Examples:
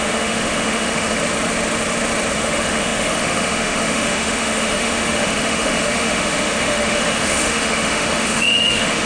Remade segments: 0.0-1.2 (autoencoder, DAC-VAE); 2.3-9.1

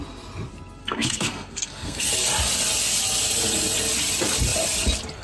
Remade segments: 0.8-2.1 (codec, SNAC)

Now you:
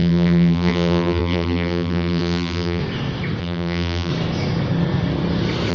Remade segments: 0.0-2.8 (vocoder, BigVGAN v2); 3.4-4.1

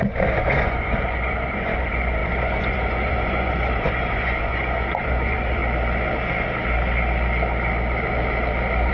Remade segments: 0.0-5.6 (vocoder, Vocos)

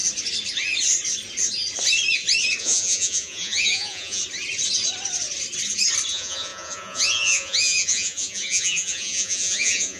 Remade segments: 2.6-4.2 (vocoder, Vocos); 6.1-10.0